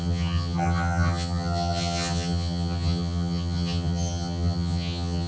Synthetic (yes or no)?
yes